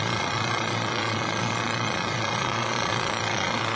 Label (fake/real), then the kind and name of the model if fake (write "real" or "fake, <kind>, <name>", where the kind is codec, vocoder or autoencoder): fake, vocoder, Vocos